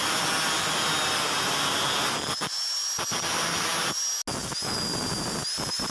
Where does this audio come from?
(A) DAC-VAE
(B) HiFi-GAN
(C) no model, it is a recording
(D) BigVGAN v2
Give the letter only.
C